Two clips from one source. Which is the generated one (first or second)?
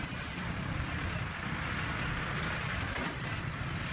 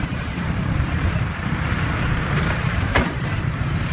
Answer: second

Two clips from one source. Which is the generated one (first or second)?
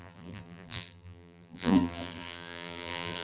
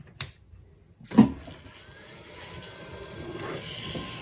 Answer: first